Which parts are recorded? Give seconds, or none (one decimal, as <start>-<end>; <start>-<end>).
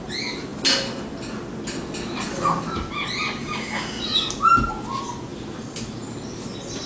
0.0-3.4; 4.0-6.9